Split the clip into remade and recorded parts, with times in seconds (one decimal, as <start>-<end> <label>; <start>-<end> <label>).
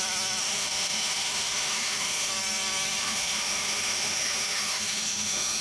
0.0-0.4 recorded; 0.4-2.3 remade; 2.3-3.0 recorded; 3.0-5.6 remade